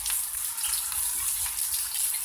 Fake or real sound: real